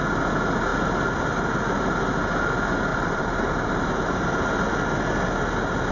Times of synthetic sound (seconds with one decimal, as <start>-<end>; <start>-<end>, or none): 2.9-4.2